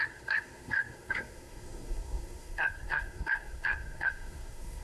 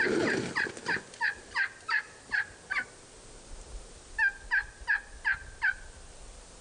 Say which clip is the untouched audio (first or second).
second